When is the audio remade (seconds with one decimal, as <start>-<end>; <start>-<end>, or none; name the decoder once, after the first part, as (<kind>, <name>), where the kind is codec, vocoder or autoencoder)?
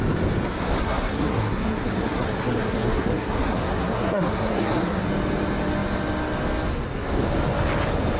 0.8-5.1 (codec, SNAC)